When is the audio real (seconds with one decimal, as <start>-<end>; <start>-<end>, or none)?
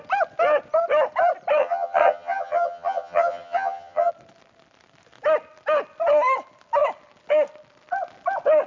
0.0-1.6; 4.1-8.7